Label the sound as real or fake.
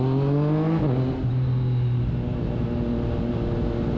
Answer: real